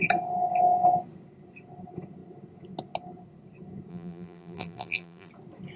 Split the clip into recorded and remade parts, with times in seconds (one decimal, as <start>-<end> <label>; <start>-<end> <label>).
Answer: 0.0-3.9 recorded; 3.9-5.3 remade; 5.3-5.8 recorded